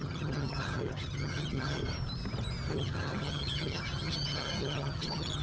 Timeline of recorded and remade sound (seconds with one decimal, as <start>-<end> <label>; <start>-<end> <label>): 0.0-1.8 remade; 1.8-2.7 recorded; 2.7-5.4 remade